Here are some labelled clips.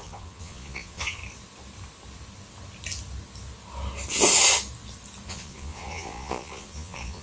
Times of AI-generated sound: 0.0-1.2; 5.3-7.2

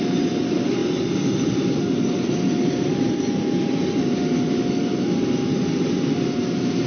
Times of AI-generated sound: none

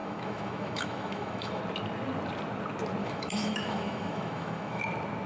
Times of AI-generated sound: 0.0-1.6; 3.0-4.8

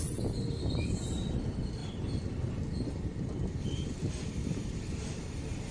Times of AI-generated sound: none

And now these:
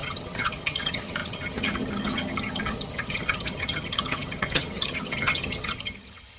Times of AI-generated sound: 0.0-6.4